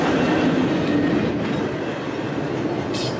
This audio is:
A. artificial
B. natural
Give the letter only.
B